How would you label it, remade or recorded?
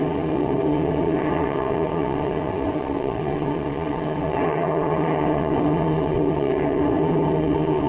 remade